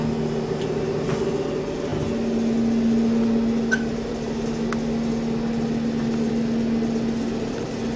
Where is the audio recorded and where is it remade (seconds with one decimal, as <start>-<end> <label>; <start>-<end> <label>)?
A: 0.0-8.0 recorded